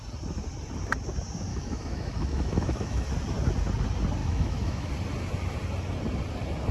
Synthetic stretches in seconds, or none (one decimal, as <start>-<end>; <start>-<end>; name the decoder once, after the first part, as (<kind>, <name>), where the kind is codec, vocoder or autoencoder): 1.5-3.1 (autoencoder, DAC-VAE); 4.2-4.9